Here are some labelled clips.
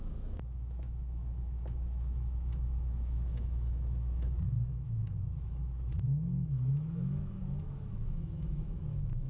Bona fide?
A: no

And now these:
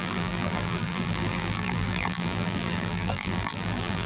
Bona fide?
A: no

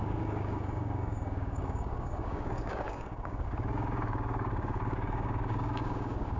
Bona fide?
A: no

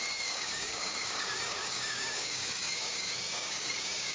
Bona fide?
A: no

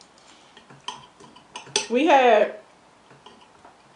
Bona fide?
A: yes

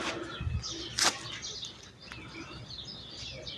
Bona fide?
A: yes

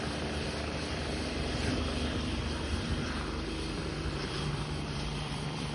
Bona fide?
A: no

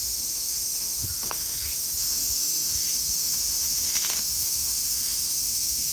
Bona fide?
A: no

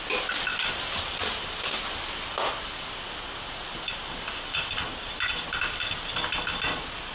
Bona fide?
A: yes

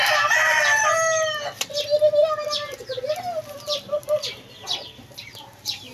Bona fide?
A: yes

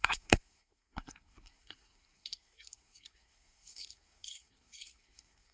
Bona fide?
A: no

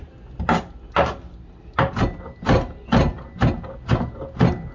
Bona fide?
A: yes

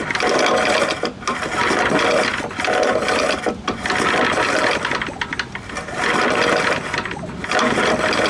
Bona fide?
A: yes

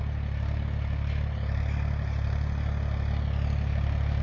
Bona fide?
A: yes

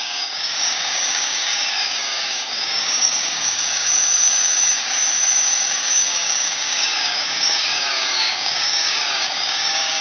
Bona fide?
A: no